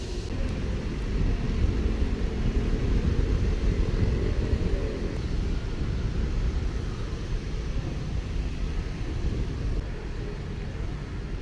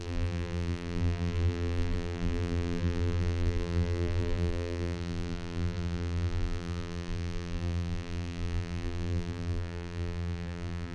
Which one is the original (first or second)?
first